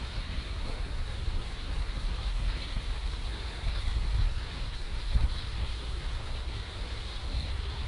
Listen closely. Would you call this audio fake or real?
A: fake